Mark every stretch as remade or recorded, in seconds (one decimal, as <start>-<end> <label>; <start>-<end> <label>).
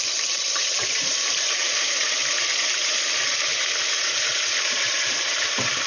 0.0-5.9 remade